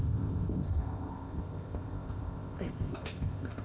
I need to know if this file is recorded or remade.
remade